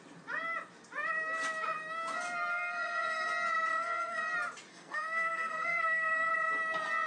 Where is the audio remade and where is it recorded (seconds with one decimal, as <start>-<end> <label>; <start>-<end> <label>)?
0.0-2.5 recorded; 2.5-3.3 remade; 3.3-3.7 recorded; 3.7-4.3 remade; 4.3-4.7 recorded; 4.7-6.3 remade; 6.3-7.1 recorded